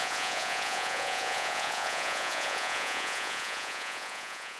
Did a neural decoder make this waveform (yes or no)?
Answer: yes